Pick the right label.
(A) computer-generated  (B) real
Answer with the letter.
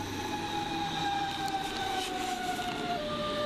B